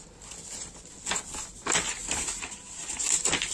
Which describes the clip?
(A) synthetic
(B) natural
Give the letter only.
B